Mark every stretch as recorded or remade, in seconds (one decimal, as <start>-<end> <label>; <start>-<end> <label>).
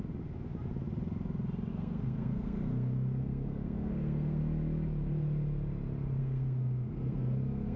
0.0-1.7 recorded; 1.7-4.4 remade; 4.4-6.2 recorded; 6.2-7.8 remade